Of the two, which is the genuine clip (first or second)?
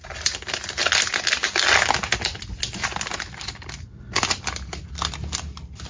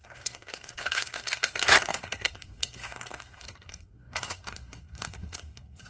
first